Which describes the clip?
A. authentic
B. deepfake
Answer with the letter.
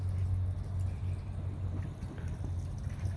A